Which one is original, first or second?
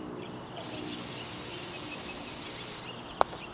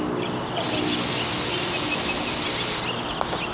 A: second